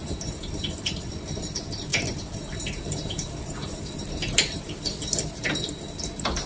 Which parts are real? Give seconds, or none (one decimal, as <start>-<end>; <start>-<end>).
1.1-1.9; 3.9-6.5